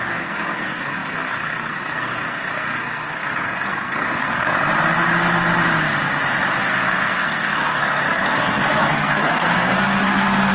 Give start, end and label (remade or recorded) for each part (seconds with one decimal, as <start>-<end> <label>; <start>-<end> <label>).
0.0-4.5 remade; 4.5-6.6 recorded; 6.6-10.5 remade